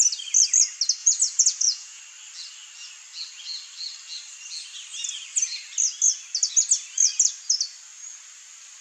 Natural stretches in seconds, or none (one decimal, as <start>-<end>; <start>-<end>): 0.0-1.0; 2.0-8.8